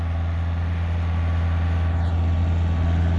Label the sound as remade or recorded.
recorded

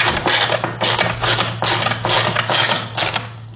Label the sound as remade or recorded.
recorded